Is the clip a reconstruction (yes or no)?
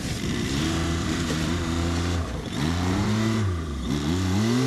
yes